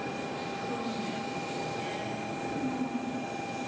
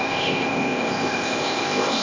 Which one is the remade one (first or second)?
second